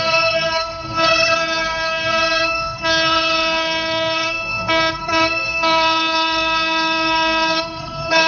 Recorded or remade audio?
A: remade